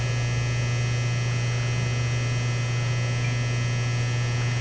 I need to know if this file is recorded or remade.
recorded